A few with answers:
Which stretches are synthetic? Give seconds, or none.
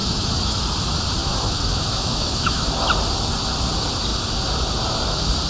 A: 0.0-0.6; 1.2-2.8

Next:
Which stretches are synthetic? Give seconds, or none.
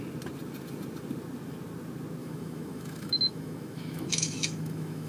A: 2.2-5.1